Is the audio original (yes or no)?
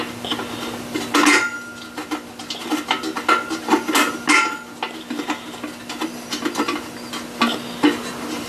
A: yes